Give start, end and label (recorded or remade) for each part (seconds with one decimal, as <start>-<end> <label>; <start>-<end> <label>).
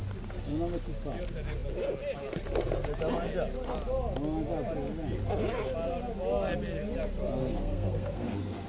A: 0.0-7.4 recorded; 7.4-8.7 remade